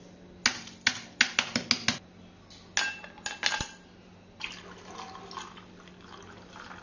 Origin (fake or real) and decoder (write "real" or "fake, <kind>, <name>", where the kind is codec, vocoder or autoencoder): real